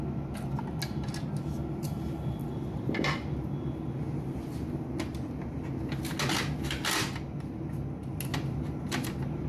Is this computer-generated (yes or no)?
no